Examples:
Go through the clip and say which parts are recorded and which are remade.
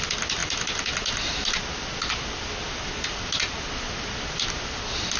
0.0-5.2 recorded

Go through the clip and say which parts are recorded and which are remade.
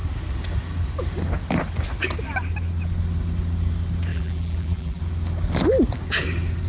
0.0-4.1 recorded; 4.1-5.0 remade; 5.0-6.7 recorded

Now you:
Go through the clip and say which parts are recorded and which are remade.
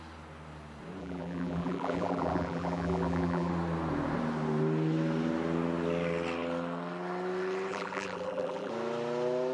0.0-1.0 recorded; 1.0-3.5 remade; 3.5-7.7 recorded; 7.7-8.7 remade; 8.7-9.5 recorded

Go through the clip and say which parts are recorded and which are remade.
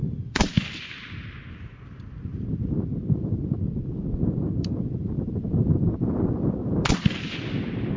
0.0-0.6 remade; 0.6-2.3 recorded; 2.3-6.9 remade; 6.9-8.0 recorded